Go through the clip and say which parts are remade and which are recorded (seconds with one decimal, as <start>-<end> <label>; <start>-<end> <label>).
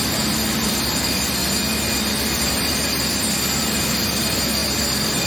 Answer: 0.0-1.4 remade; 1.4-4.1 recorded; 4.1-4.6 remade; 4.6-5.3 recorded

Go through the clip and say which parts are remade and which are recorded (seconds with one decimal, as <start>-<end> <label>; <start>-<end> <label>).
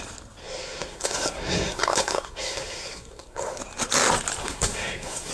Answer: 0.0-0.4 recorded; 0.4-3.6 remade; 3.6-4.4 recorded; 4.4-5.3 remade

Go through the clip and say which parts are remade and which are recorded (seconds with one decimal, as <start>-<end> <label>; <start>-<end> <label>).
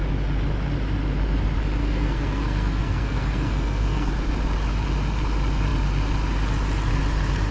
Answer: 0.0-1.8 recorded; 1.8-4.1 remade; 4.1-7.5 recorded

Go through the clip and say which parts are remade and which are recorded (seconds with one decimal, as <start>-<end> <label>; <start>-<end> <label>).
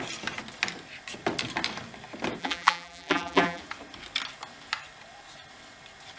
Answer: 0.0-2.4 recorded; 2.4-3.6 remade; 3.6-6.2 recorded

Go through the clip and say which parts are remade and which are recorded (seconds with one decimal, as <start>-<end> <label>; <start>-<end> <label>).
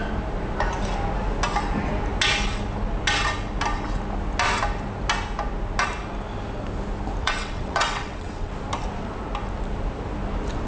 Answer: 0.0-7.2 recorded; 7.2-8.5 remade; 8.5-10.7 recorded